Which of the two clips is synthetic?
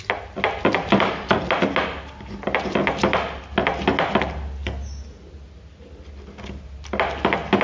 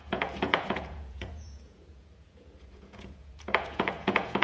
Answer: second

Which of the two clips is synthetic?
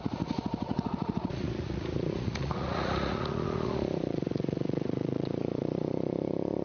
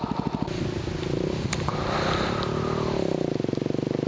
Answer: first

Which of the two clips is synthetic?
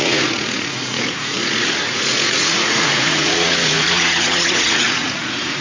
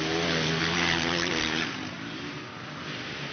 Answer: first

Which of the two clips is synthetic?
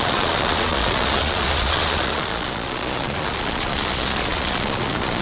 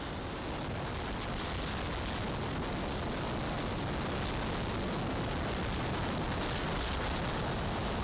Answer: first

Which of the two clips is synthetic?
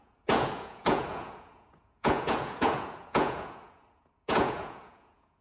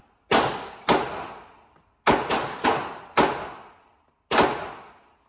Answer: first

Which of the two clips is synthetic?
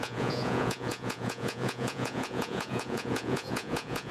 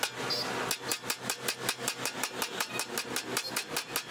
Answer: first